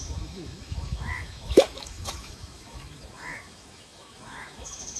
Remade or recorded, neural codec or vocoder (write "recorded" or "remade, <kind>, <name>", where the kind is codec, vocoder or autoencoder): remade, autoencoder, DAC-VAE